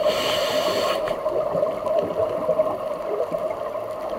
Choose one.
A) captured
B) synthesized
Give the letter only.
A